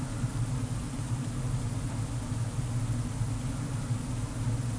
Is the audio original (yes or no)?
yes